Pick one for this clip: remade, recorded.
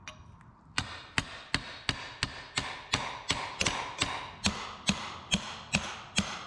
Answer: recorded